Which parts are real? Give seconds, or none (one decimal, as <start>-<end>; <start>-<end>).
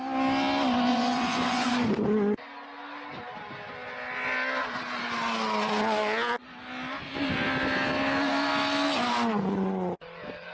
0.0-0.9; 1.7-10.5